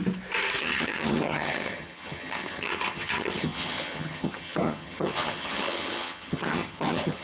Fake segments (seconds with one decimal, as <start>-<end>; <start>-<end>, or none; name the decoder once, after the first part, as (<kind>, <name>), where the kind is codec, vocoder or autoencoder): 0.6-7.2 (vocoder, HiFi-GAN)